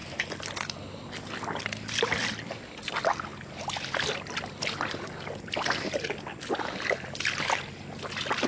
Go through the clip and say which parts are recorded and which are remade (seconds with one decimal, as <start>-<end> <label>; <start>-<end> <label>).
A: 0.0-8.5 recorded